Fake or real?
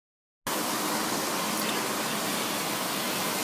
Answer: real